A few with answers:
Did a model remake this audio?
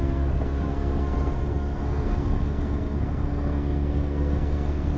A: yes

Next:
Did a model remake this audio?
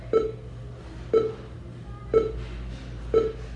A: no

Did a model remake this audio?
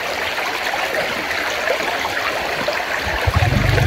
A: no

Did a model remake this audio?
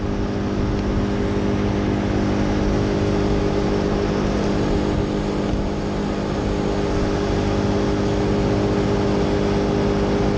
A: no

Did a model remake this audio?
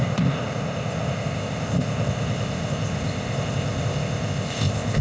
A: yes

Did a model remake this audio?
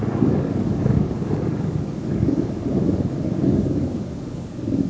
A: yes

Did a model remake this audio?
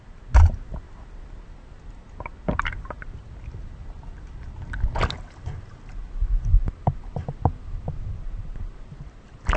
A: no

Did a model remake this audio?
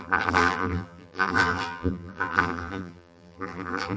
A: yes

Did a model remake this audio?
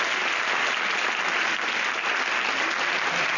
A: no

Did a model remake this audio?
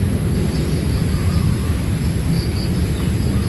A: no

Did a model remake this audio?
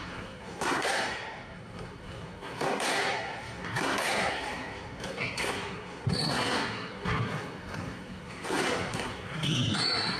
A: yes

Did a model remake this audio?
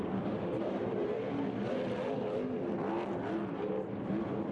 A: no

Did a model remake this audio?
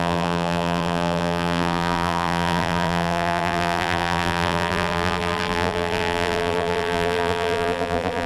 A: yes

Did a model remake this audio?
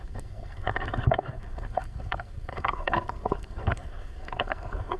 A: yes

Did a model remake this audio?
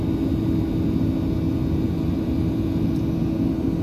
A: no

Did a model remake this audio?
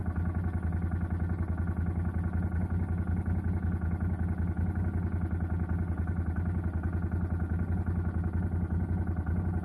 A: no